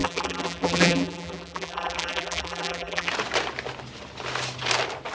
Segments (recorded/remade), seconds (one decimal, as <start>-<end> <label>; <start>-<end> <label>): 0.0-3.1 remade; 3.1-5.1 recorded